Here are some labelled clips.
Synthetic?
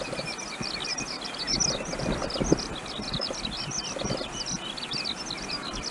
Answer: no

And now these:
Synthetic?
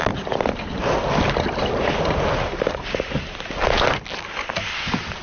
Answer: no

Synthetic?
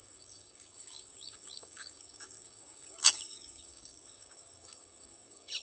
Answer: yes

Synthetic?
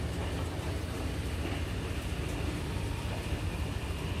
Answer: no